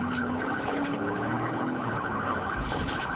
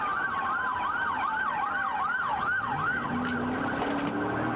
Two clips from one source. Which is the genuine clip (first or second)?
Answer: second